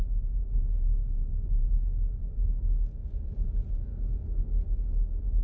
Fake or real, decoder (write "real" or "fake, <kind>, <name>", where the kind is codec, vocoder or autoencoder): real